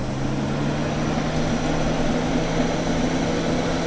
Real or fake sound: real